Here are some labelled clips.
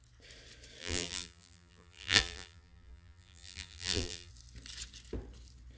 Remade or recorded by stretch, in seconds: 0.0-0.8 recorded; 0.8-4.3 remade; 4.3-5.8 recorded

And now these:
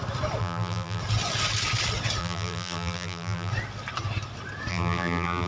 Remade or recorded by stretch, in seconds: 0.0-0.4 recorded; 0.4-1.0 remade; 1.0-2.2 recorded; 2.2-3.5 remade; 3.5-4.7 recorded; 4.7-5.5 remade

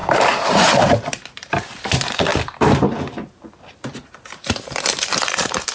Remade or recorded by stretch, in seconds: 0.0-2.3 remade; 2.3-4.9 recorded; 4.9-5.7 remade

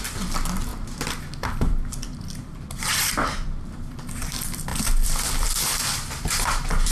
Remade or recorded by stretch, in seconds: 0.0-0.7 remade; 0.7-1.6 recorded; 1.6-6.9 remade